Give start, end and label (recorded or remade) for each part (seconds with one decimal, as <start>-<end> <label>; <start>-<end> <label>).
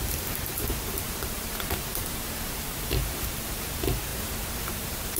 0.0-5.2 remade